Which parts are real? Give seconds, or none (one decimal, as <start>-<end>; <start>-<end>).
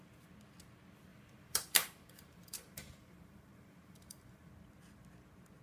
0.0-1.1; 4.5-5.6